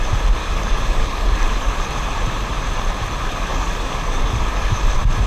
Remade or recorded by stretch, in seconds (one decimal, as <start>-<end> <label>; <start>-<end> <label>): 0.0-0.4 recorded; 0.4-1.9 remade; 1.9-3.5 recorded; 3.5-4.8 remade; 4.8-5.3 recorded